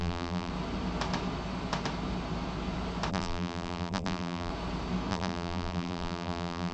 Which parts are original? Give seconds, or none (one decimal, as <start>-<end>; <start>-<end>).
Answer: 0.5-3.1; 4.5-5.1